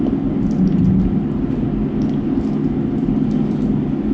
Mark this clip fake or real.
real